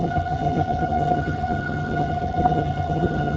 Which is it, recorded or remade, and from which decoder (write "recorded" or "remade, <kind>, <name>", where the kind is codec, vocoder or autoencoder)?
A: remade, vocoder, HiFi-GAN